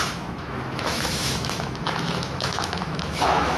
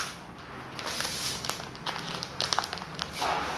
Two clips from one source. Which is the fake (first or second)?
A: first